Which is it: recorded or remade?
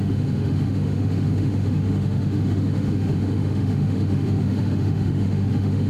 remade